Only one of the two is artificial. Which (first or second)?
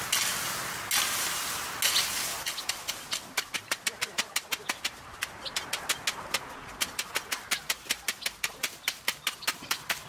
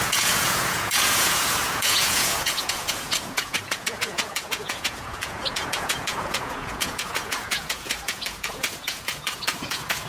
second